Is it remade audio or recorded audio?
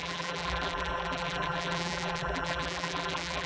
remade